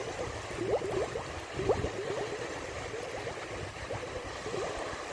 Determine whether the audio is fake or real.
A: real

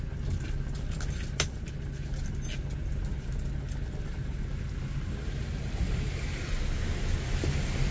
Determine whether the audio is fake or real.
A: real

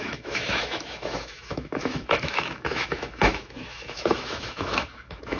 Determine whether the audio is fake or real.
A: fake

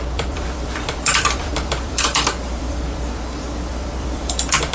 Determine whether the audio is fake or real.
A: fake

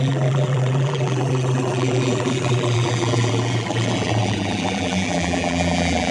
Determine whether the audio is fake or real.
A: fake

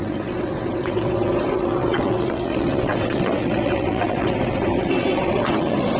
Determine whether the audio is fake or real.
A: fake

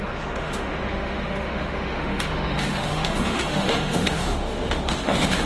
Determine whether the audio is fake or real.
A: fake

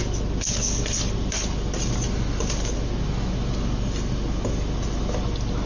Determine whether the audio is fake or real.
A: real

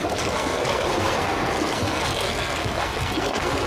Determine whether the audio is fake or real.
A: fake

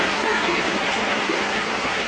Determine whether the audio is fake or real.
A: fake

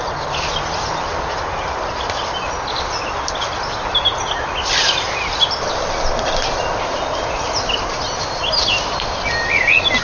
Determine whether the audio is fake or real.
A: real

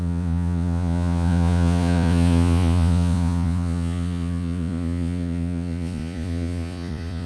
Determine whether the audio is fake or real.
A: fake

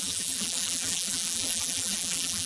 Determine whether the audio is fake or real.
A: fake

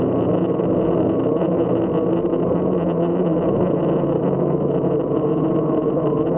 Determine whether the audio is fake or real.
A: real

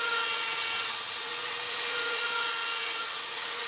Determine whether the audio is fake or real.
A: fake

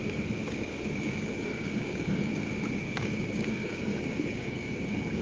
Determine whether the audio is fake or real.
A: fake